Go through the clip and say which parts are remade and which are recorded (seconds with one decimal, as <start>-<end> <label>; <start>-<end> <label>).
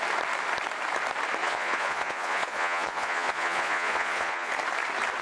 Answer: 0.0-1.4 recorded; 1.4-4.5 remade; 4.5-5.2 recorded